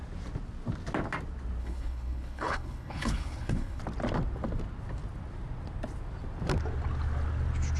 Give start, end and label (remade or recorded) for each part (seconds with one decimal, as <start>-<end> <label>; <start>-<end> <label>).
0.0-1.6 recorded; 1.6-3.8 remade; 3.8-7.8 recorded